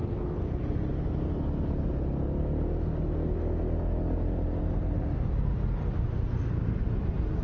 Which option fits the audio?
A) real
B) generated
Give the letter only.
A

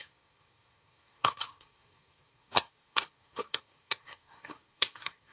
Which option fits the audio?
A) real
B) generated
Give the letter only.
B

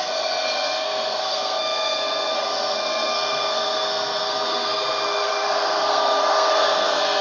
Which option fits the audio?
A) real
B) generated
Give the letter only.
B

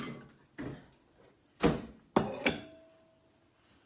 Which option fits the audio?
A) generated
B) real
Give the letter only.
B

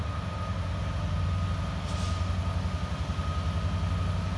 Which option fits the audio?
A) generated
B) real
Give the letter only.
B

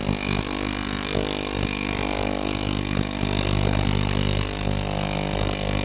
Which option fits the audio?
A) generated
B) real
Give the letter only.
B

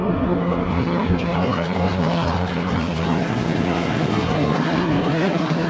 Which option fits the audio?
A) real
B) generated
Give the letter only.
B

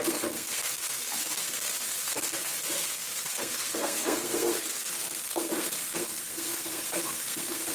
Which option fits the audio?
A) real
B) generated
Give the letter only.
B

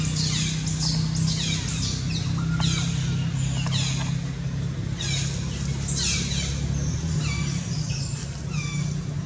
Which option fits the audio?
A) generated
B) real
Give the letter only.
B